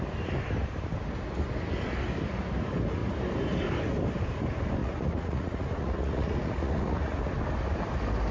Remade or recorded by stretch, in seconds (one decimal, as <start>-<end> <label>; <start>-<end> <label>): 0.0-4.8 recorded; 4.8-7.2 remade; 7.2-8.3 recorded